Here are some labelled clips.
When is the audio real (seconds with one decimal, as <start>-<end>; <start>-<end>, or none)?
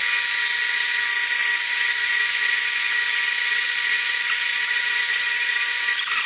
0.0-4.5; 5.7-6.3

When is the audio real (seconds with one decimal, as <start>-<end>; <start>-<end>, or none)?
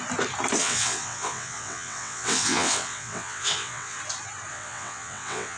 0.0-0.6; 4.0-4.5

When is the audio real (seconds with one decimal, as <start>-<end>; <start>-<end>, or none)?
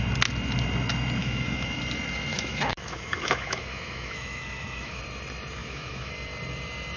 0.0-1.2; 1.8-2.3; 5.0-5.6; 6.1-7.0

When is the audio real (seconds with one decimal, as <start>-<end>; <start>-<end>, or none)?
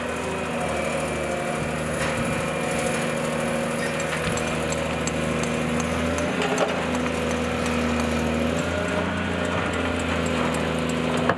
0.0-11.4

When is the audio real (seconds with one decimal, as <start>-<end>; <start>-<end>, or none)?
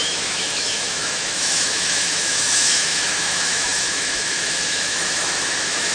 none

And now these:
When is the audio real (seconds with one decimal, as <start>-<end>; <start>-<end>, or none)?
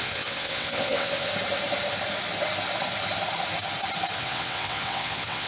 1.3-4.2